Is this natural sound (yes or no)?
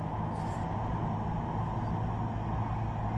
yes